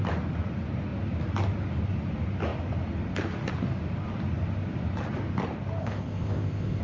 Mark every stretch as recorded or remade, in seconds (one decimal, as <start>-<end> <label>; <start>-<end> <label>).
0.0-5.8 recorded; 5.8-6.8 remade